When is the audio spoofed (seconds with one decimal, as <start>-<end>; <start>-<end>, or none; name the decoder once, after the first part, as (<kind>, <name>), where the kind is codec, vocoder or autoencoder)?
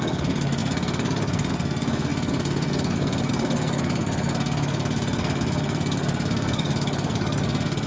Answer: 0.0-7.9 (codec, SNAC)